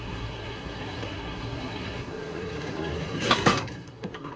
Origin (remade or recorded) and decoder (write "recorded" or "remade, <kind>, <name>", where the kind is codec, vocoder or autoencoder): remade, codec, SNAC